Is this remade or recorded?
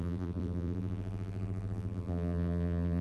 remade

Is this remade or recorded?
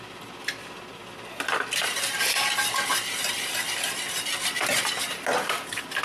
recorded